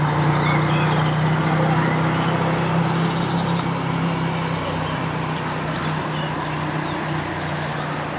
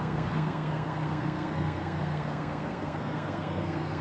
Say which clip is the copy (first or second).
second